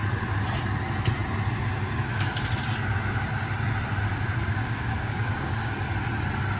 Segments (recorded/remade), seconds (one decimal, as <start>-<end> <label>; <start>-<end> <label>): 0.0-4.4 recorded; 4.4-5.7 remade; 5.7-6.6 recorded